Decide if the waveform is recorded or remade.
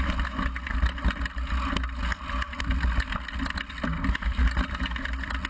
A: recorded